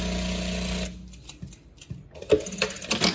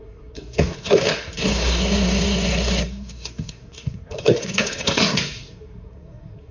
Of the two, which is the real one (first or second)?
first